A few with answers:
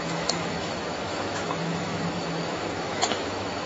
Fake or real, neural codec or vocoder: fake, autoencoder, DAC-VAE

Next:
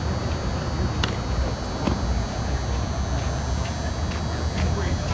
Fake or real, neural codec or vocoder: real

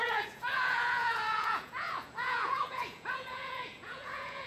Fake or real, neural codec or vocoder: fake, vocoder, Vocos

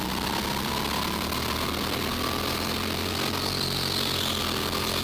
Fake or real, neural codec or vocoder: real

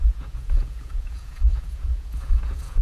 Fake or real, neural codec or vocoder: fake, vocoder, Vocos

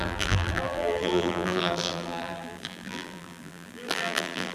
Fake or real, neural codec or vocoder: fake, vocoder, BigVGAN v2